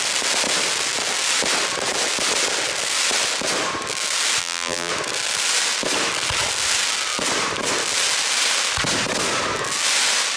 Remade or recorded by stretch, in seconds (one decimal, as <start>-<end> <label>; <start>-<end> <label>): 0.0-4.4 recorded; 4.4-4.9 remade; 4.9-10.4 recorded